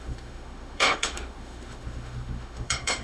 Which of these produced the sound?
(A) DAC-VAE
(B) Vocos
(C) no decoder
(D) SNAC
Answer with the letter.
A